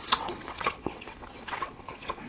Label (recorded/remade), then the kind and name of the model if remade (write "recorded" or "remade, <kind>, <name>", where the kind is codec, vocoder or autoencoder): remade, vocoder, WaveNeXt